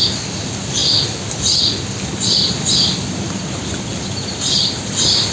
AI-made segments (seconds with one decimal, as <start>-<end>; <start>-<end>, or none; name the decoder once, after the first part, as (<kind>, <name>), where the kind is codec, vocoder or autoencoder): none